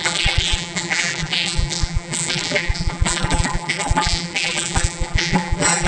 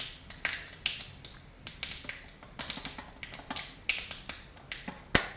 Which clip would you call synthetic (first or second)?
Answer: first